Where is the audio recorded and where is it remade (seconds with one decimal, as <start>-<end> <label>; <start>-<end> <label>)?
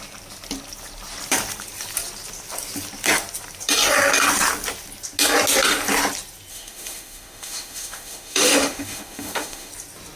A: 0.0-6.5 recorded; 6.5-9.7 remade; 9.7-10.2 recorded